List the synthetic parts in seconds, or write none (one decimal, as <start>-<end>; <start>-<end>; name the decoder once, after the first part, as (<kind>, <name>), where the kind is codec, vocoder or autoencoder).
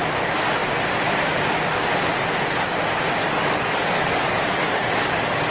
3.2-5.5 (codec, DAC)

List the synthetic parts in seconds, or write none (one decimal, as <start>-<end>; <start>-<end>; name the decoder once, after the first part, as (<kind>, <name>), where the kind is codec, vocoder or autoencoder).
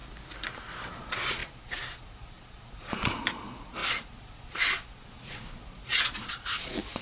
0.9-7.0 (vocoder, Vocos)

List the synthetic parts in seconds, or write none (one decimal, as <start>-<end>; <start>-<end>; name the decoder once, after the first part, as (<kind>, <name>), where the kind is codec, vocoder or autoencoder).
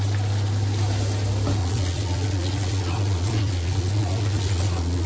1.6-5.1 (vocoder, Vocos)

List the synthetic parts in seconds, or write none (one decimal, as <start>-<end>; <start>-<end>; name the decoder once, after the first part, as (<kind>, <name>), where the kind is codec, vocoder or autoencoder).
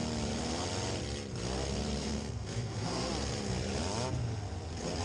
2.0-3.1 (codec, SNAC)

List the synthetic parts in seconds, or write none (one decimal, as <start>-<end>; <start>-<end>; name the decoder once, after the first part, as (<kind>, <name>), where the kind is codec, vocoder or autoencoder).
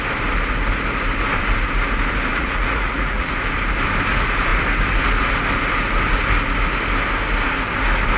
2.3-3.3 (vocoder, Vocos)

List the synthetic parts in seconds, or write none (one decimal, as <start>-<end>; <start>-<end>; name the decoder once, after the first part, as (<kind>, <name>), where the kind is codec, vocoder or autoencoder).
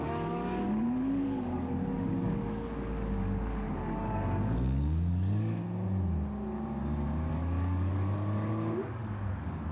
0.0-5.6 (codec, DAC); 7.3-9.7